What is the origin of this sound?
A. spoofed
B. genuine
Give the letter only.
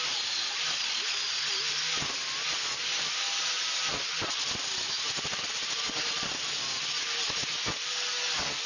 B